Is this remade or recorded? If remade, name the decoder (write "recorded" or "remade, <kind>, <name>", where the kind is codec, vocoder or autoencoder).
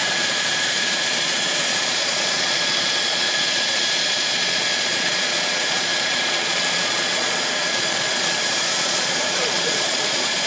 remade, vocoder, Vocos